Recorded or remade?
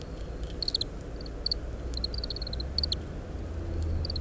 recorded